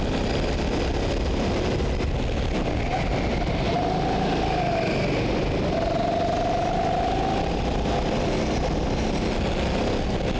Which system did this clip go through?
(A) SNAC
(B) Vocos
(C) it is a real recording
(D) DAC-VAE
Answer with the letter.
C